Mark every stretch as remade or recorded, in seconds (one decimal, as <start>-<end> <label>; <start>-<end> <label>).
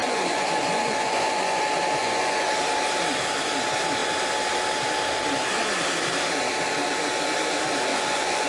0.0-1.6 remade; 1.6-2.0 recorded; 2.0-2.5 remade; 2.5-7.9 recorded; 7.9-8.5 remade